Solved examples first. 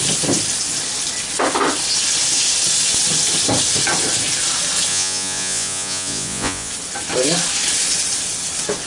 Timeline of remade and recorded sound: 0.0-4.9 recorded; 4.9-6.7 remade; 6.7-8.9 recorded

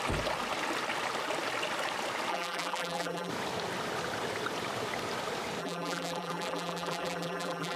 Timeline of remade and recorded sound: 0.0-2.3 recorded; 2.3-3.3 remade; 3.3-5.6 recorded; 5.6-7.8 remade

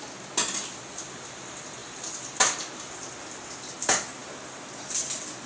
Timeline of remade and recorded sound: 0.0-5.5 recorded

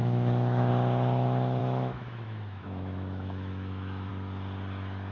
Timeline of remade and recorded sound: 0.0-0.7 remade; 0.7-1.6 recorded; 1.6-4.1 remade; 4.1-5.1 recorded

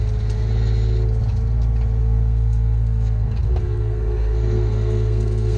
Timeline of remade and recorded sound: 0.0-2.0 recorded; 2.0-5.6 remade

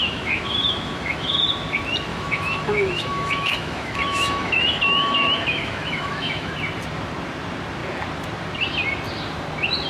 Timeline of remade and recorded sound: 0.0-1.4 remade; 1.4-2.1 recorded; 2.1-6.5 remade; 6.5-9.9 recorded

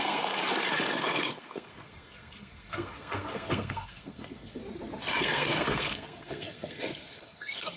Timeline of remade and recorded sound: 0.0-0.4 remade; 0.4-1.0 recorded; 1.0-4.6 remade; 4.6-5.1 recorded; 5.1-7.8 remade

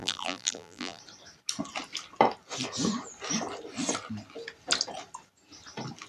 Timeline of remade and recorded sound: 0.0-1.0 remade; 1.0-6.1 recorded